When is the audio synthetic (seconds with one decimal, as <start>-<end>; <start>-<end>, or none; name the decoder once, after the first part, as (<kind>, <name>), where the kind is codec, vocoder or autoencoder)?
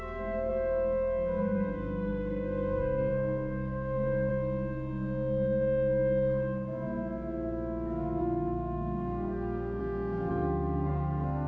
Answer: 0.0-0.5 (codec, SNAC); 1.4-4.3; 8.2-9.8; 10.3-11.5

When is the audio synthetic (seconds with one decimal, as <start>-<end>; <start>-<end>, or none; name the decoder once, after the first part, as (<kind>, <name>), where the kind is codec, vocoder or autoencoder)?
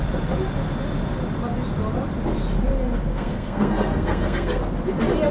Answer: 3.1-4.6 (codec, SNAC)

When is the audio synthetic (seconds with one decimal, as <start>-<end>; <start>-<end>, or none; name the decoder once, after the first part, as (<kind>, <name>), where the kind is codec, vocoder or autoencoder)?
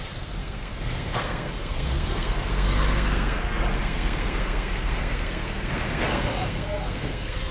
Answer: 0.0-7.5 (codec, SNAC)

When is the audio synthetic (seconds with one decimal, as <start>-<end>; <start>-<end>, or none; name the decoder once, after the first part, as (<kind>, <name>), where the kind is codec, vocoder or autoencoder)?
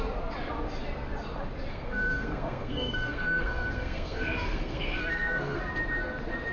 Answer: 1.7-5.6 (codec, SNAC)